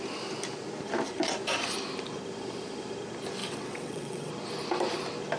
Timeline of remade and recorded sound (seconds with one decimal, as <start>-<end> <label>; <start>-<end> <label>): 0.0-3.4 recorded; 3.4-4.3 remade; 4.3-5.4 recorded